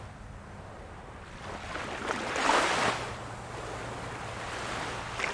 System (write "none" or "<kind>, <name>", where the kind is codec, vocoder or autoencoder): none